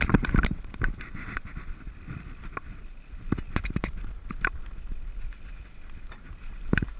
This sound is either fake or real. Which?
real